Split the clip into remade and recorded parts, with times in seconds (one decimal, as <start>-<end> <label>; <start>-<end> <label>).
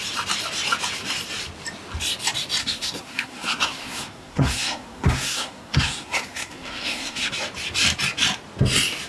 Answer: 0.0-2.6 recorded; 2.6-7.3 remade; 7.3-9.1 recorded